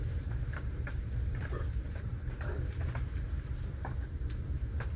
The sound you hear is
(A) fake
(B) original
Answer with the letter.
A